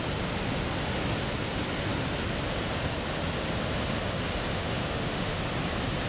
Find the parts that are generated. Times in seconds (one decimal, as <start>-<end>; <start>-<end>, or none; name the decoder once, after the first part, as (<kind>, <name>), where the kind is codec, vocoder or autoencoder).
4.5-5.4 (autoencoder, DAC-VAE)

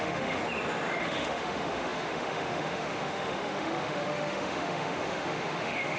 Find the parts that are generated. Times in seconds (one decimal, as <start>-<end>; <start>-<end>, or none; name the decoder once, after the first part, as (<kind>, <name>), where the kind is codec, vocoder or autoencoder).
0.0-0.4 (autoencoder, DAC-VAE); 1.0-6.0

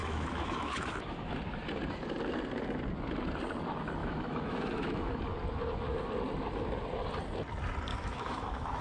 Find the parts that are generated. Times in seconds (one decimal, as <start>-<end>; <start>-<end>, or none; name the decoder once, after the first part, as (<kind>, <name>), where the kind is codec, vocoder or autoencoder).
0.0-1.4 (autoencoder, DAC-VAE); 4.0-5.2; 7.9-8.8

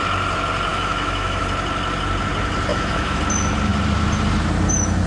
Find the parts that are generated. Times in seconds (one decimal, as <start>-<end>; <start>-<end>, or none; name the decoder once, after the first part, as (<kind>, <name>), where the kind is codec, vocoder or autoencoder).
0.7-1.4 (autoencoder, DAC-VAE); 2.7-3.2

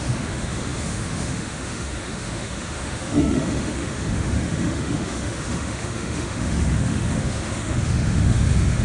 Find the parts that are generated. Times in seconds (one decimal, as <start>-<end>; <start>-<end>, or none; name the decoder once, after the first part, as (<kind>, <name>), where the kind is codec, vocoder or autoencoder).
0.0-8.8 (autoencoder, DAC-VAE)

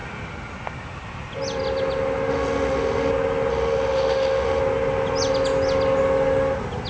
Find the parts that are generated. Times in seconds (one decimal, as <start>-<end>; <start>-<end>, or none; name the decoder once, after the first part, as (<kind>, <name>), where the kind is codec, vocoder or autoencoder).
2.3-3.1 (autoencoder, DAC-VAE); 3.5-4.6

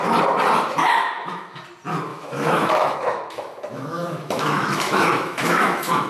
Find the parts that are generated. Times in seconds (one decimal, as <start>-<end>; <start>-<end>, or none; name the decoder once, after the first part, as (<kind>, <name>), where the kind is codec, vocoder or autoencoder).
0.8-1.6 (autoencoder, DAC-VAE); 2.1-6.1